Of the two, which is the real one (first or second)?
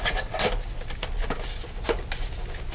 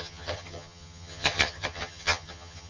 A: first